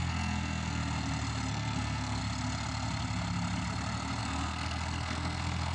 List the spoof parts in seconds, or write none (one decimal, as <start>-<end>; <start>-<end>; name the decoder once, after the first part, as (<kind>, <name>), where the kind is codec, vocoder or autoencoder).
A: 0.0-0.8 (codec, SNAC); 1.5-2.2; 4.2-5.7